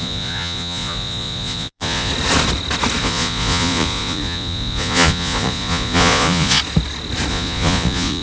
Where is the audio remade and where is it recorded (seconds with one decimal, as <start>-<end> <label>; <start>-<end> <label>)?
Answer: 0.0-2.1 remade; 2.1-3.0 recorded; 3.0-6.6 remade; 6.6-7.3 recorded; 7.3-8.2 remade